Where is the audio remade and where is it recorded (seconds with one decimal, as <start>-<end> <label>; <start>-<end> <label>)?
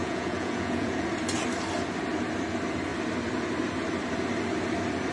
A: 0.0-1.1 remade; 1.1-5.1 recorded